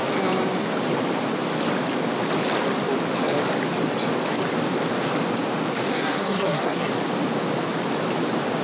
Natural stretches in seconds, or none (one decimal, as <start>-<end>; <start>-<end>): 0.0-5.9; 6.9-8.6